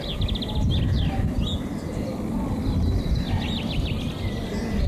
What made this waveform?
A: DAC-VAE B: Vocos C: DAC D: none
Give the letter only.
D